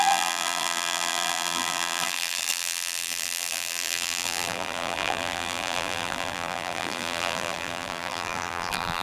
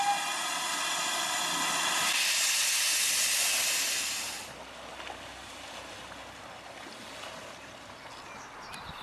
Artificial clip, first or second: first